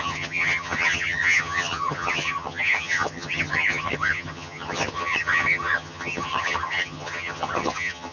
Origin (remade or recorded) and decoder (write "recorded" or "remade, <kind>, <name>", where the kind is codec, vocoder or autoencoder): remade, vocoder, HiFi-GAN